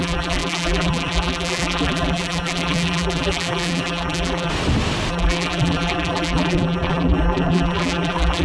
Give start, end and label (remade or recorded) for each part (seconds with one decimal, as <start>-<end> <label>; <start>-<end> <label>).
0.0-4.5 remade; 4.5-5.1 recorded; 5.1-8.4 remade